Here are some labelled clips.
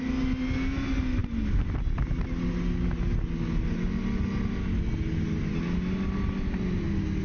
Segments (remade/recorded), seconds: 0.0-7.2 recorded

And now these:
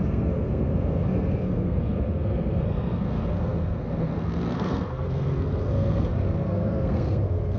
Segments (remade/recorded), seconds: 0.0-7.6 remade

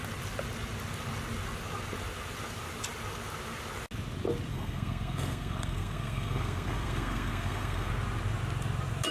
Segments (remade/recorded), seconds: 0.0-4.5 recorded; 4.5-7.9 remade; 7.9-9.1 recorded

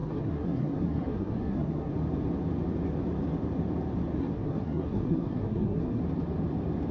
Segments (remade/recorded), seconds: 0.0-1.9 remade; 1.9-4.2 recorded; 4.2-6.0 remade; 6.0-6.9 recorded

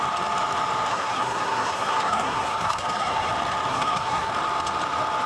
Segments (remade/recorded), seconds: 0.0-0.9 recorded; 0.9-3.3 remade; 3.3-3.7 recorded; 3.7-4.3 remade; 4.3-5.3 recorded

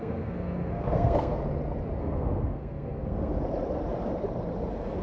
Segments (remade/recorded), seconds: 0.0-1.4 remade; 1.4-2.0 recorded; 2.0-3.3 remade; 3.3-5.0 recorded

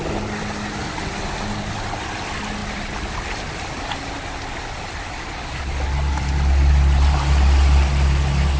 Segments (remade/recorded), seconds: 0.0-8.6 recorded

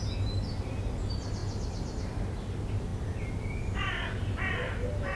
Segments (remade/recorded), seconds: 0.0-5.2 recorded